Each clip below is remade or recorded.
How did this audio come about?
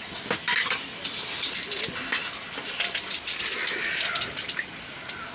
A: recorded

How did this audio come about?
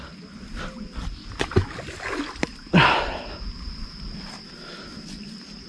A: recorded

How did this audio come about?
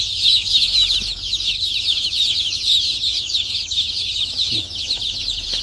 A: remade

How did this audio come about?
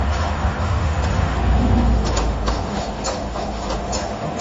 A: remade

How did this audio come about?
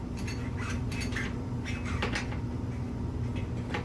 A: recorded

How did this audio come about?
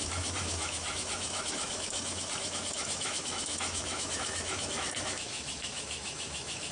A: remade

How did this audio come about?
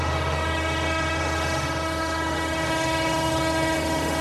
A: remade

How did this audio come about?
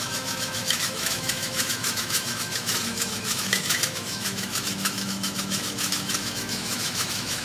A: remade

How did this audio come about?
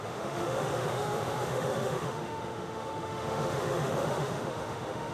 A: remade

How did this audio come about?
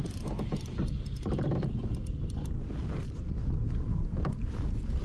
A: recorded